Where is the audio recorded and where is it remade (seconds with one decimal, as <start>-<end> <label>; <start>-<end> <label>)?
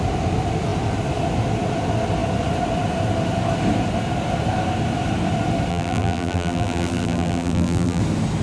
0.0-5.7 recorded; 5.7-8.0 remade; 8.0-8.4 recorded